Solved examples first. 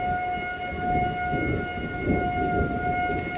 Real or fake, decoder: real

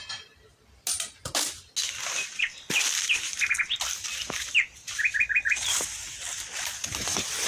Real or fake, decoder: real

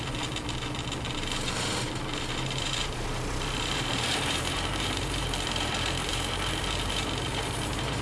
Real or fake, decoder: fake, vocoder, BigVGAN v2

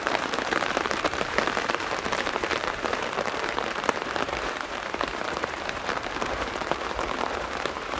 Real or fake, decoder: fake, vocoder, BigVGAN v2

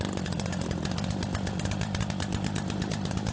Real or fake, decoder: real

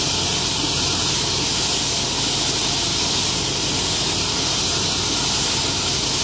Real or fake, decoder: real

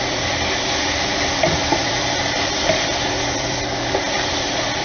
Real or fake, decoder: fake, vocoder, BigVGAN v2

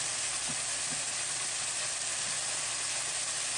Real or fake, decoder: real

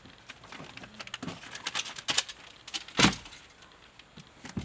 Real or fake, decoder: real